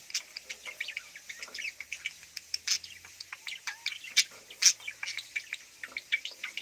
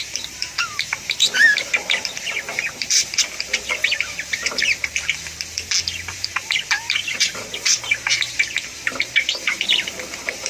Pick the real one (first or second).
first